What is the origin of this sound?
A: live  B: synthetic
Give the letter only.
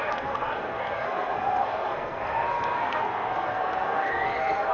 B